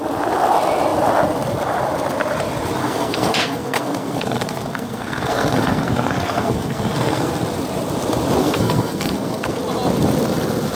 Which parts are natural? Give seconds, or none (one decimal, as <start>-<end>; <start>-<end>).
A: 0.0-2.8; 7.3-8.4; 9.6-10.7